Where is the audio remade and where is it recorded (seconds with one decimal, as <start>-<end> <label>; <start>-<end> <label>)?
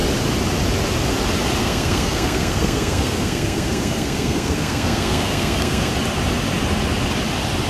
0.0-1.6 recorded; 1.6-5.9 remade; 5.9-7.7 recorded